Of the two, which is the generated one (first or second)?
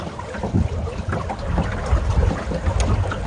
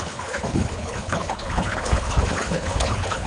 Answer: second